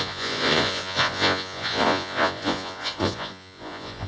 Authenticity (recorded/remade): remade